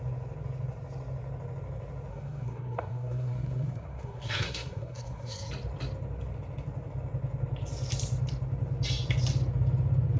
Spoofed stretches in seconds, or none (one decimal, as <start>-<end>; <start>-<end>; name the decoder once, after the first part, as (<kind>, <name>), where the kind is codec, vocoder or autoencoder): 2.1-5.5 (codec, SNAC)